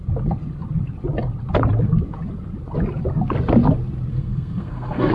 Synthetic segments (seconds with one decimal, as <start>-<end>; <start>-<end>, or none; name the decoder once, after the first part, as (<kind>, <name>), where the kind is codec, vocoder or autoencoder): 4.1-5.1 (codec, SNAC)